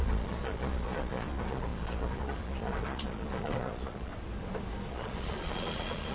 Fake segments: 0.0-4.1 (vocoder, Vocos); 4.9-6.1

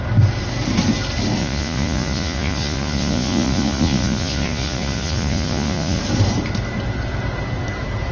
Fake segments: 1.4-6.0 (vocoder, Vocos)

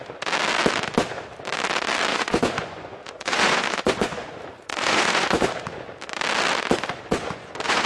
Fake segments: 2.1-5.5 (vocoder, Vocos); 7.0-7.9

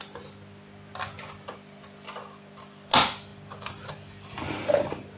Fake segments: none

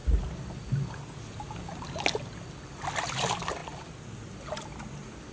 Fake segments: none

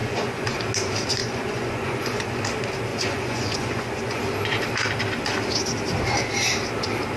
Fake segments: 0.0-0.6 (vocoder, Vocos); 1.2-2.4; 2.9-4.2

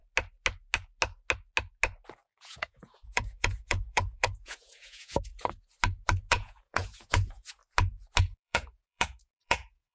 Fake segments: 2.4-5.3 (vocoder, Vocos); 6.3-7.6; 8.2-9.9